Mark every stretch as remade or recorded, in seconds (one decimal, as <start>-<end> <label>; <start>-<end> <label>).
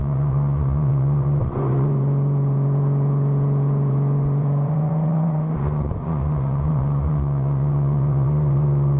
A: 0.0-9.0 remade